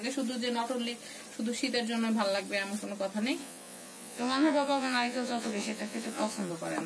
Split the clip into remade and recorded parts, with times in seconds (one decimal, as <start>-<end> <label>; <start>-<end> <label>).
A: 0.0-3.4 recorded; 3.4-6.5 remade; 6.5-6.9 recorded